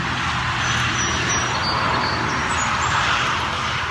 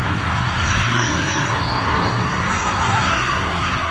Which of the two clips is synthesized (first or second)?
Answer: second